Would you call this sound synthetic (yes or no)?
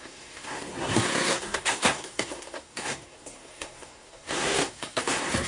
yes